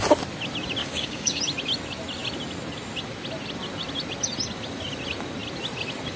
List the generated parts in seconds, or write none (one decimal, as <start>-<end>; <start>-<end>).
0.8-1.4